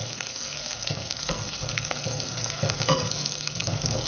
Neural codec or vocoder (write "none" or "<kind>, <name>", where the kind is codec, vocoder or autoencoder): codec, SNAC